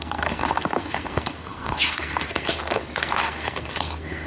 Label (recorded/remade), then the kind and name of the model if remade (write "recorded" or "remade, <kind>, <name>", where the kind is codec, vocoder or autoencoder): remade, codec, SNAC